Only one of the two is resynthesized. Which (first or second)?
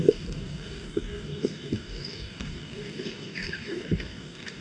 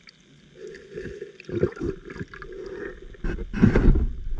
first